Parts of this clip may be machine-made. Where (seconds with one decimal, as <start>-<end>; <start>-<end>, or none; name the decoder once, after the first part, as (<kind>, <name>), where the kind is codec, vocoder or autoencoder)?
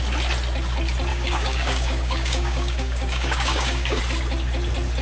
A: 1.1-4.0 (codec, DAC)